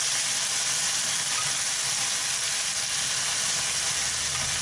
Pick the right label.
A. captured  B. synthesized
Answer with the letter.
A